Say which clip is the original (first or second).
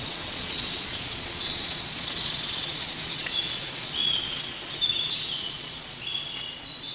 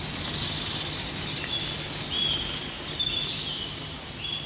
second